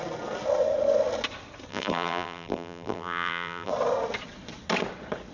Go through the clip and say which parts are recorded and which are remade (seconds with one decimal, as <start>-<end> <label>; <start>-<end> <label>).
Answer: 0.0-1.7 recorded; 1.7-3.7 remade; 3.7-5.3 recorded

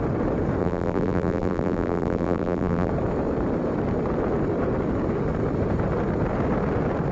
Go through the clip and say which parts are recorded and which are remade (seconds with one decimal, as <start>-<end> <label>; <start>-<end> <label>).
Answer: 0.0-0.6 recorded; 0.6-2.9 remade; 2.9-7.1 recorded

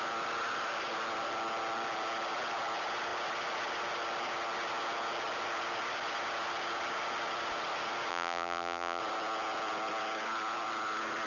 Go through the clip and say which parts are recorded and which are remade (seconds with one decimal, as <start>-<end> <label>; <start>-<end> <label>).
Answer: 0.0-8.1 recorded; 8.1-9.0 remade; 9.0-11.3 recorded

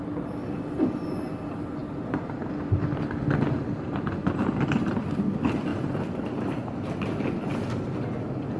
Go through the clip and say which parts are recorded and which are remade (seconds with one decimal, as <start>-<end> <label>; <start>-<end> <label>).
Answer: 0.0-1.8 recorded; 1.8-2.5 remade; 2.5-4.2 recorded; 4.2-5.2 remade; 5.2-5.7 recorded; 5.7-7.0 remade; 7.0-8.6 recorded

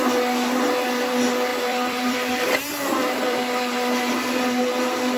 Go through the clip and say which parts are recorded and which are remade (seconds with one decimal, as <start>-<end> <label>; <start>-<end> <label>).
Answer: 0.0-1.5 recorded; 1.5-4.6 remade; 4.6-5.2 recorded

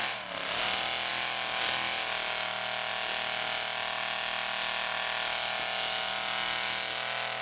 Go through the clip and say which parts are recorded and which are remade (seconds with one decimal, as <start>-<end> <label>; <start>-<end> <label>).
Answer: 0.0-0.6 remade; 0.6-7.4 recorded

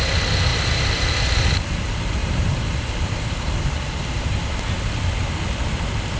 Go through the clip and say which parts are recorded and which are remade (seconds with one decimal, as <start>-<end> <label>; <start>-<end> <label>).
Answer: 0.0-0.5 recorded; 0.5-1.1 remade; 1.1-2.2 recorded; 2.2-4.4 remade; 4.4-6.2 recorded